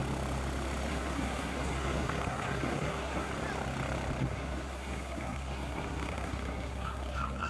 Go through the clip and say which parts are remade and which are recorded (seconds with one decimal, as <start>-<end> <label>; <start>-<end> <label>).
0.0-0.9 recorded; 0.9-3.3 remade; 3.3-4.2 recorded; 4.2-7.5 remade